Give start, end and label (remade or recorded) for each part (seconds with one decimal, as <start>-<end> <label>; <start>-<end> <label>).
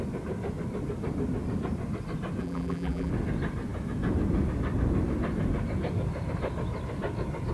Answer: 0.0-2.4 recorded; 2.4-3.1 remade; 3.1-7.5 recorded